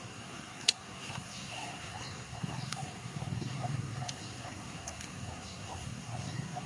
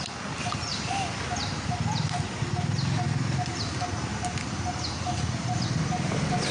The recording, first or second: second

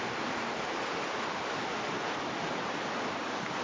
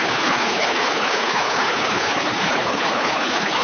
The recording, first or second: first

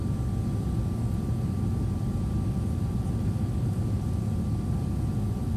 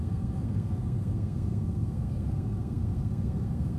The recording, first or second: first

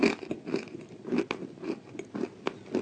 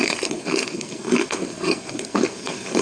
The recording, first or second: first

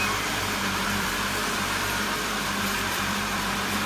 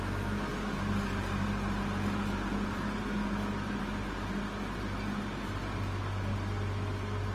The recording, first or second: second